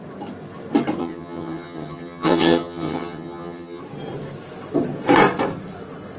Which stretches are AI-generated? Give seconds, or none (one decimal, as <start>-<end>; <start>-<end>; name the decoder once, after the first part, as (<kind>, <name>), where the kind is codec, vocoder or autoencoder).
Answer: 1.0-3.8 (vocoder, HiFi-GAN)